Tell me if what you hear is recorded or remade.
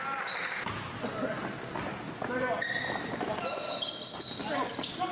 recorded